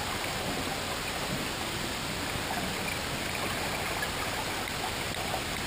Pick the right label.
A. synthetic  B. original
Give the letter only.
B